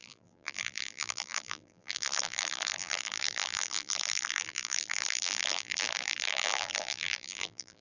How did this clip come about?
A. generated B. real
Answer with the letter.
A